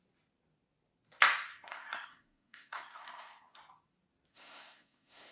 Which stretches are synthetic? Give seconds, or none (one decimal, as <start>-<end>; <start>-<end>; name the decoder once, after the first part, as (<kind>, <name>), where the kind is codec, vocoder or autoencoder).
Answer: 1.5-3.6 (codec, SNAC); 4.3-5.3